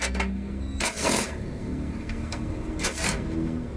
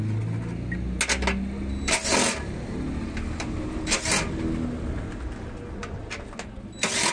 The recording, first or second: second